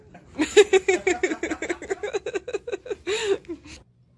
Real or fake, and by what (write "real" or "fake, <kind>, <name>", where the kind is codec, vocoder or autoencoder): real